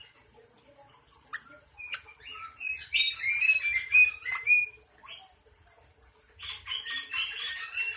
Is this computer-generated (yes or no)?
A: no